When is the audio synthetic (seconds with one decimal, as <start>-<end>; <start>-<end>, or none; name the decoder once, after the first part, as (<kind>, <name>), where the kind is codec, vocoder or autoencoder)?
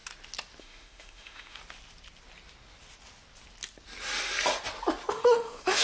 0.6-1.6 (autoencoder, DAC-VAE); 5.1-5.8